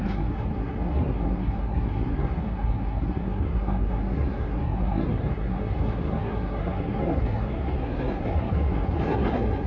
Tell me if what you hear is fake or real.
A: fake